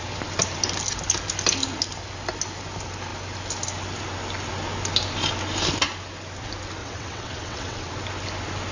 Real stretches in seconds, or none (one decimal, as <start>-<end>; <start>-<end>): 0.0-6.8; 7.9-8.7